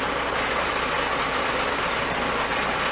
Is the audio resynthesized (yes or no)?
yes